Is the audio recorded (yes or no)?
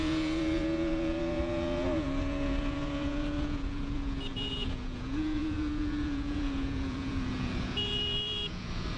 no